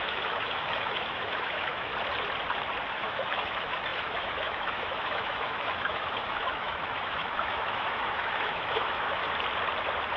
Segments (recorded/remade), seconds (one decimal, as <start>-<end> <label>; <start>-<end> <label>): 0.0-1.9 remade; 1.9-2.9 recorded; 2.9-9.2 remade; 9.2-10.2 recorded